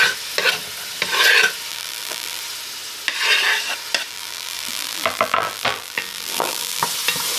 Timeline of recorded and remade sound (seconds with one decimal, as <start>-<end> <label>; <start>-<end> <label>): 0.0-1.7 recorded; 1.7-2.4 remade; 2.4-4.1 recorded; 4.1-6.8 remade; 6.8-7.4 recorded